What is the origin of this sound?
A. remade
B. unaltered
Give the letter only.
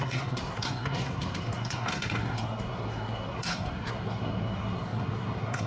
A